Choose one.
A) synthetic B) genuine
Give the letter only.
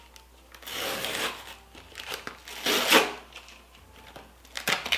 B